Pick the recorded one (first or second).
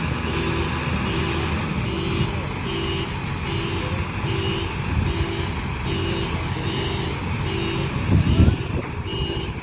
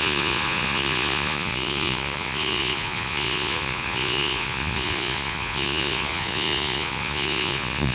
first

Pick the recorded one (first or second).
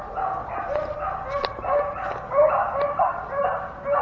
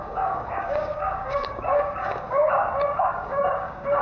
first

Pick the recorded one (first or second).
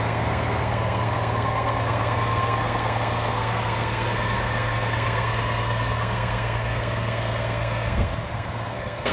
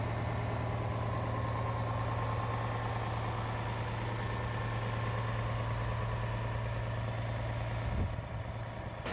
second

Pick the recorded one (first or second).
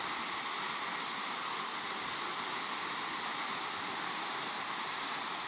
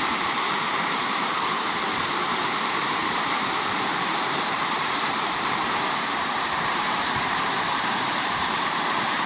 first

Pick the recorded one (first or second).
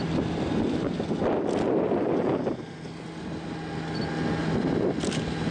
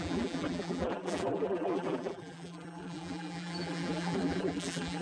first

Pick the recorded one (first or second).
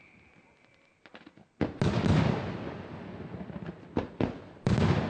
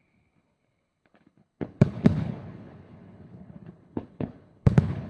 first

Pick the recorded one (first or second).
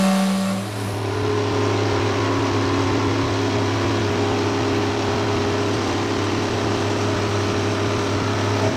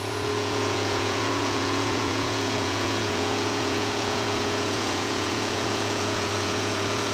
first